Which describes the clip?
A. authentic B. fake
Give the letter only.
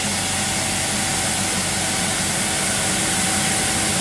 A